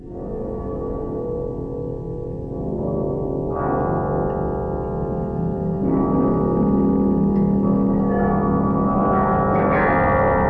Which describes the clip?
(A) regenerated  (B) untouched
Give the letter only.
B